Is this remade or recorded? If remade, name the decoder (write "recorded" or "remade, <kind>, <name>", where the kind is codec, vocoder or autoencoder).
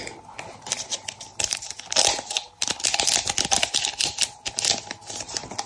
recorded